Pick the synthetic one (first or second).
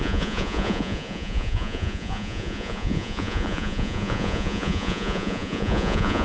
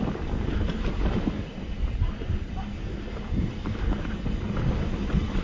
first